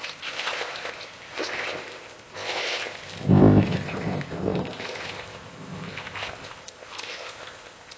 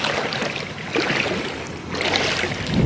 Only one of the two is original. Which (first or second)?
second